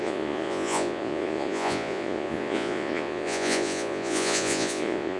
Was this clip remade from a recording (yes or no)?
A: yes